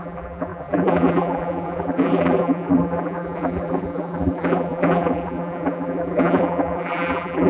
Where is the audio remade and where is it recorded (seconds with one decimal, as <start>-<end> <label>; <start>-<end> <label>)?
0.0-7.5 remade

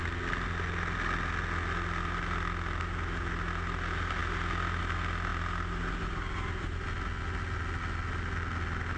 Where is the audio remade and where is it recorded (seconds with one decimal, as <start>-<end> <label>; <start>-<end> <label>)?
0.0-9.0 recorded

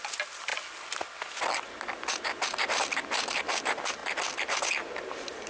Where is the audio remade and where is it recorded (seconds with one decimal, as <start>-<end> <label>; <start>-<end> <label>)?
0.0-5.5 recorded